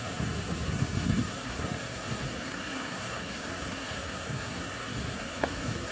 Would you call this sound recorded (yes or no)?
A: no